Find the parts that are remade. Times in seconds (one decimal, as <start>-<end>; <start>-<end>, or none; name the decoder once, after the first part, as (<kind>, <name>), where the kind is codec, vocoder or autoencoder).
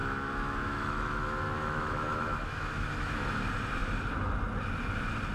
0.0-3.2 (autoencoder, DAC-VAE)